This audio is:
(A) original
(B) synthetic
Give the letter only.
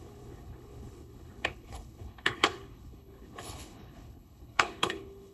B